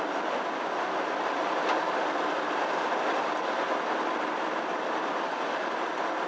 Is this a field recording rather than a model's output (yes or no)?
yes